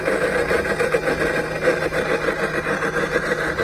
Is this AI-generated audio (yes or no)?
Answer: no